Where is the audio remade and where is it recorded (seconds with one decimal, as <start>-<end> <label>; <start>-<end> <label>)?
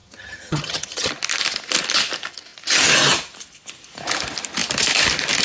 0.0-1.1 remade; 1.1-5.4 recorded